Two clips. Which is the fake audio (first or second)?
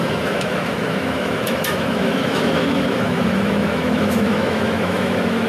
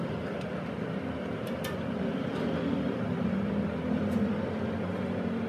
first